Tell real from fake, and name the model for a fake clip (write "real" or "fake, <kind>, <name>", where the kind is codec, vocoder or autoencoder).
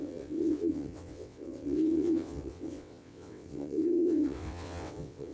fake, vocoder, WaveNeXt